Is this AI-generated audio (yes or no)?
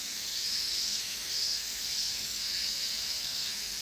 yes